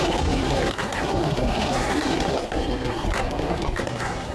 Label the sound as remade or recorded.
remade